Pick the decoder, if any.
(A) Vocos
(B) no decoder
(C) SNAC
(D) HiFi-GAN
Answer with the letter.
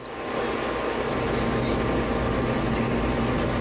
B